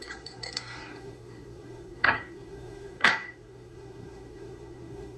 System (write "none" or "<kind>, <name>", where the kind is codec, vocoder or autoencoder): codec, SNAC